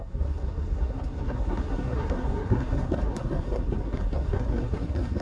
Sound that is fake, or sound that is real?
fake